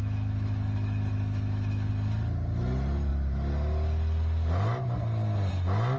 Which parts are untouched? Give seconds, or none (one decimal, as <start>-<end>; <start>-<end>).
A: 1.9-6.0